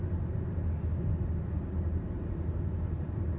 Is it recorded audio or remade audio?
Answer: recorded